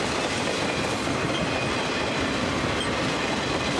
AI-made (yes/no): no